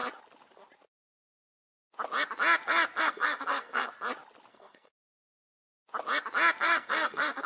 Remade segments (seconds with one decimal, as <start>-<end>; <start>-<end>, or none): 3.0-3.9; 4.5-5.2; 6.6-7.5